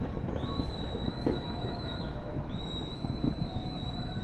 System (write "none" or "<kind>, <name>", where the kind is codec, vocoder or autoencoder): autoencoder, DAC-VAE